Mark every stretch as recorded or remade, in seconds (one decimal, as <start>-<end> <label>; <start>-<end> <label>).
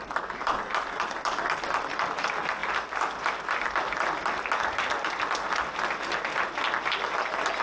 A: 0.0-7.6 recorded